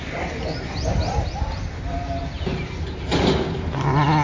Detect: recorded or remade recorded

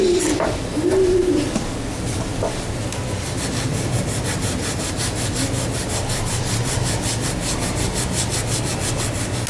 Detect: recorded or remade recorded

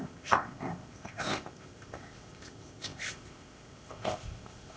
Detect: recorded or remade remade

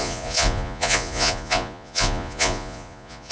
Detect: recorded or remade remade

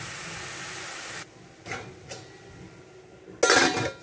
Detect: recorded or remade recorded